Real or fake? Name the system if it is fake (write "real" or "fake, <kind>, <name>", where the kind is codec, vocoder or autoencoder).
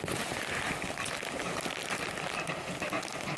real